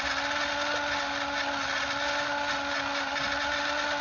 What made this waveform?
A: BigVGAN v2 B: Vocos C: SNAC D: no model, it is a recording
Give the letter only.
D